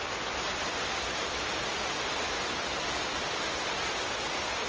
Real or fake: real